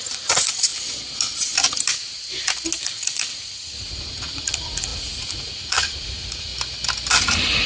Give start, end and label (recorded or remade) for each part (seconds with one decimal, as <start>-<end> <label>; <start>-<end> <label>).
0.0-0.7 remade; 0.7-2.8 recorded; 2.8-6.5 remade; 6.5-7.2 recorded; 7.2-7.7 remade